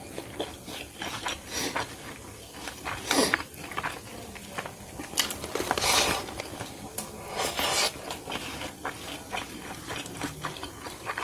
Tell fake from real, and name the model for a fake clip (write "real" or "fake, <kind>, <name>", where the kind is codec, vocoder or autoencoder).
real